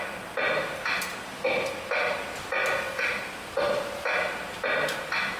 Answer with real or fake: real